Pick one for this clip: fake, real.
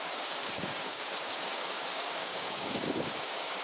fake